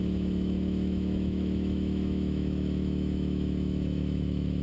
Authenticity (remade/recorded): remade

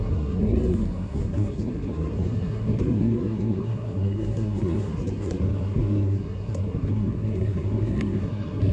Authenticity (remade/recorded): remade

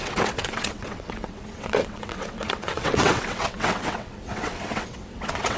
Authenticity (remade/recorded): remade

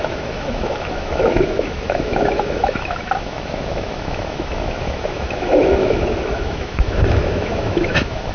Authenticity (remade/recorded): remade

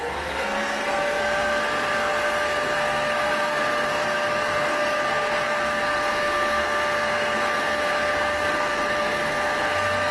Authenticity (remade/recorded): remade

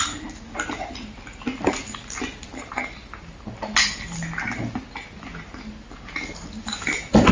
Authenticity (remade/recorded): recorded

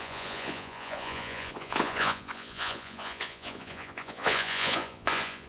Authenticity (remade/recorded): remade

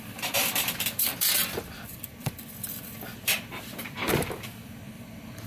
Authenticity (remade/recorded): remade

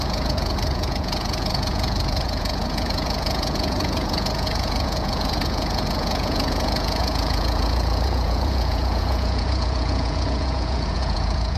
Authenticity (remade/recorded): remade